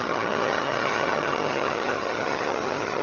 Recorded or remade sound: remade